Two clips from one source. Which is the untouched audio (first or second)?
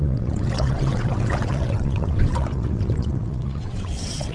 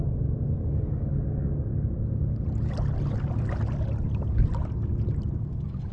second